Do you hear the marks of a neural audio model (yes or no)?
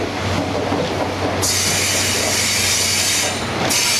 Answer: no